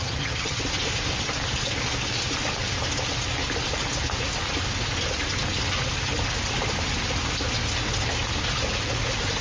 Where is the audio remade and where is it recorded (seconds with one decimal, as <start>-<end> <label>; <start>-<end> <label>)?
0.0-0.6 remade; 0.6-9.4 recorded